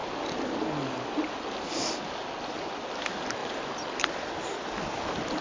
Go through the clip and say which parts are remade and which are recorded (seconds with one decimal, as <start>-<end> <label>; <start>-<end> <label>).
0.0-5.4 recorded